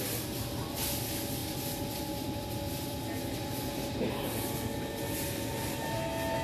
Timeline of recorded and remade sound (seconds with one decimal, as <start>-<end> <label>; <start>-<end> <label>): 0.0-1.4 recorded; 1.4-4.1 remade; 4.1-6.4 recorded